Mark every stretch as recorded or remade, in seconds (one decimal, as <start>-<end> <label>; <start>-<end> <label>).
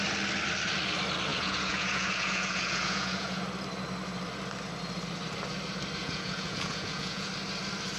0.0-1.3 recorded; 1.3-3.4 remade; 3.4-6.0 recorded; 6.0-7.3 remade; 7.3-8.0 recorded